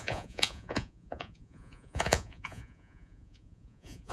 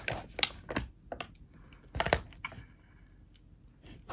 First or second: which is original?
second